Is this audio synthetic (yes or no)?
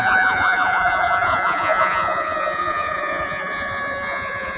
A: yes